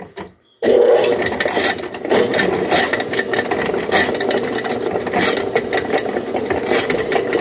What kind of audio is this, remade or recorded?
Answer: recorded